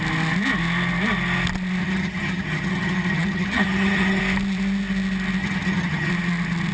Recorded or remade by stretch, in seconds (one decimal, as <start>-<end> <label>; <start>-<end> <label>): 0.0-1.8 recorded; 1.8-4.2 remade; 4.2-5.4 recorded; 5.4-6.1 remade; 6.1-6.7 recorded